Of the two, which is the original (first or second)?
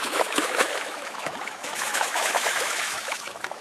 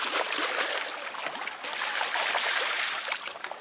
second